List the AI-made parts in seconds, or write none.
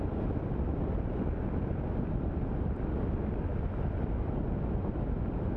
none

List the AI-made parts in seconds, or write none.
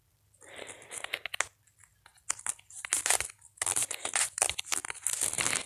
none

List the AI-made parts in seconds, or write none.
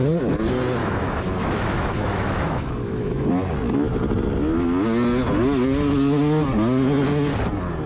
0.8-3.3 (autoencoder, DAC-VAE)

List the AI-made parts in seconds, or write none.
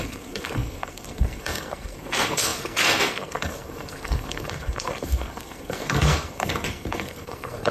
0.0-7.7 (codec, SNAC)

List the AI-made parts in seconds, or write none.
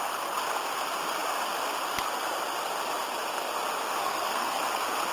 4.0-4.6 (codec, SNAC)